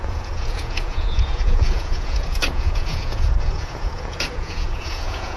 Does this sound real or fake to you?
fake